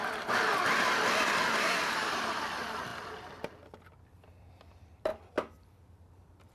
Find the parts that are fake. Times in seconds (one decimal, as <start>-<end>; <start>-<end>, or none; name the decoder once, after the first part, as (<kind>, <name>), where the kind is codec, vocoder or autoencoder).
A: 2.2-2.9 (vocoder, BigVGAN v2); 4.5-5.1; 6.1-6.5

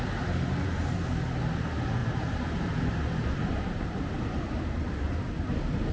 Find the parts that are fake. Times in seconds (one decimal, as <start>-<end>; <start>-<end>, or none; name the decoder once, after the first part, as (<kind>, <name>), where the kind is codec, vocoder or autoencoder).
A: 2.0-4.4 (vocoder, BigVGAN v2)

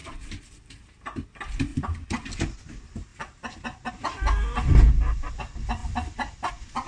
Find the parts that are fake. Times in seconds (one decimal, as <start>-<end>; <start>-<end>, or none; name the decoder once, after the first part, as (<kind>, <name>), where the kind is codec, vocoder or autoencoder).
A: 0.0-0.8 (vocoder, BigVGAN v2); 1.7-2.3; 5.8-6.5